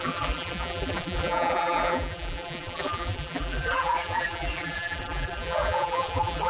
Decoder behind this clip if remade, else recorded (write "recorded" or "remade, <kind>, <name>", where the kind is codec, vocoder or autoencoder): remade, vocoder, BigVGAN v2